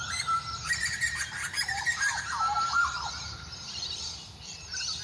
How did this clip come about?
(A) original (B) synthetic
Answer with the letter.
A